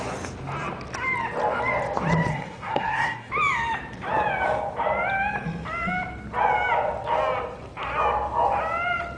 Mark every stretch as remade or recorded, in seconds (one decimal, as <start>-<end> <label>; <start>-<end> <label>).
0.0-2.3 recorded; 2.3-3.3 remade; 3.3-9.2 recorded